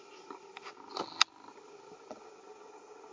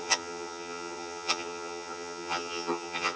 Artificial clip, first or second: second